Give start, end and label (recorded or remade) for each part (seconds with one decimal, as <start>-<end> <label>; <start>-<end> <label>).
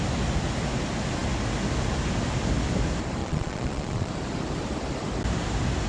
0.0-3.2 recorded; 3.2-4.1 remade; 4.1-5.9 recorded